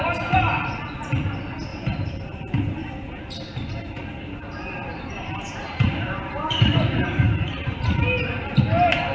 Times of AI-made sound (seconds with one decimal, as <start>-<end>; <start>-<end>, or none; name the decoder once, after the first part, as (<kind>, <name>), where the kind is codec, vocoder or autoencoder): 1.7-3.2 (vocoder, BigVGAN v2); 4.9-8.0